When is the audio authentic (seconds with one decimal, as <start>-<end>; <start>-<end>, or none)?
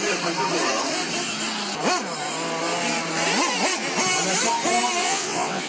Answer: 0.0-5.0